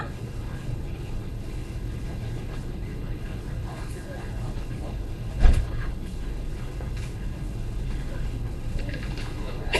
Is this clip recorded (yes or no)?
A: no